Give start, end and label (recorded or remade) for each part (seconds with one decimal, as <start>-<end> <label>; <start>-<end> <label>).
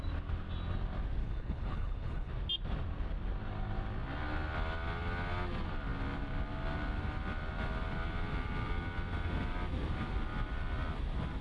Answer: 0.0-1.2 recorded; 1.2-2.3 remade; 2.3-11.4 recorded